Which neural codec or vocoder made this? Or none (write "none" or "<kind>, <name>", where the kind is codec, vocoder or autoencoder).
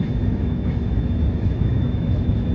autoencoder, DAC-VAE